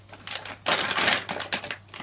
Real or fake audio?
real